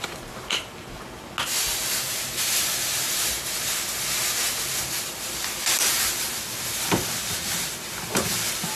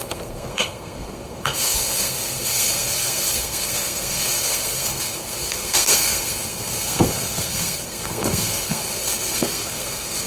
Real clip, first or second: first